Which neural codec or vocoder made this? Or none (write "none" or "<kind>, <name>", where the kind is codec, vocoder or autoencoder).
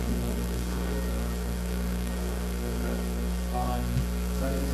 codec, SNAC